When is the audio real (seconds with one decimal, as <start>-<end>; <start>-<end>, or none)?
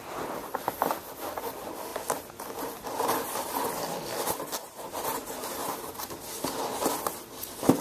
0.0-7.8